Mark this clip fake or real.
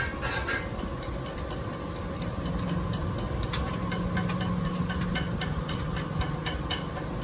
real